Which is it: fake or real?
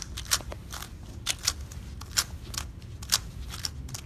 real